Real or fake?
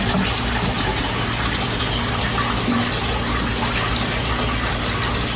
real